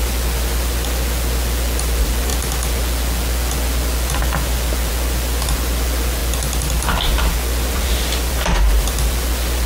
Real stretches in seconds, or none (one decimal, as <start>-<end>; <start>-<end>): 0.0-9.7